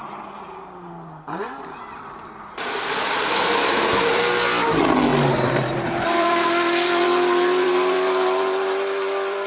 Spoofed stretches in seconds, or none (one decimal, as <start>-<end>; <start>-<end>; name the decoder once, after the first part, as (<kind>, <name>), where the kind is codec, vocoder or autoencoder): 0.0-4.2 (vocoder, BigVGAN v2); 5.1-9.5